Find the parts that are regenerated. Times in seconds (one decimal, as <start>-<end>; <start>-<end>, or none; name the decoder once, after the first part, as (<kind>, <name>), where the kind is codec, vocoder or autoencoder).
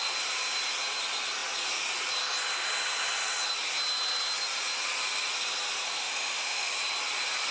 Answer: 6.0-6.7 (autoencoder, DAC-VAE)